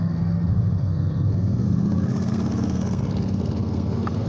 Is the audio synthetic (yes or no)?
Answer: yes